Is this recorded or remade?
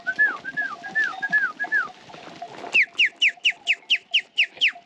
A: recorded